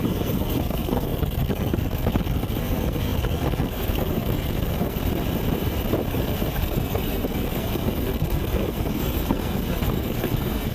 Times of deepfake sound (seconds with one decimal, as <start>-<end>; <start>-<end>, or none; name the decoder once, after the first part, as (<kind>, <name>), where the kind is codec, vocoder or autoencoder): 0.0-5.0 (codec, SNAC); 6.1-10.7